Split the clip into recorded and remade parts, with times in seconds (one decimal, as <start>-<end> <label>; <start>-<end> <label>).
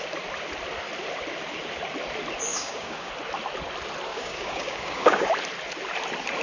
0.0-2.5 recorded; 2.5-3.1 remade; 3.1-4.1 recorded; 4.1-5.3 remade; 5.3-6.4 recorded